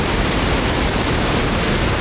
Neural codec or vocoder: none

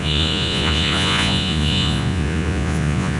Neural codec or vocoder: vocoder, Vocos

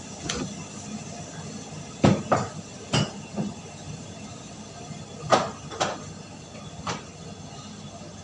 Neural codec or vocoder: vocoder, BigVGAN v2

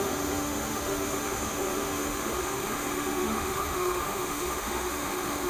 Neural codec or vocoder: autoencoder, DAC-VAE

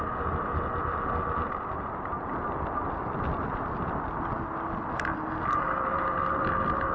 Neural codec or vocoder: none